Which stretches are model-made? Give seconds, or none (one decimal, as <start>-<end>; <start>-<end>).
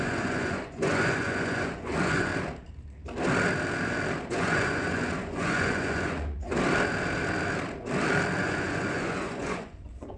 0.0-2.3; 4.3-6.5; 8.4-10.2